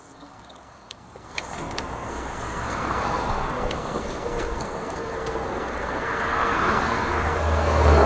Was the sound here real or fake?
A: fake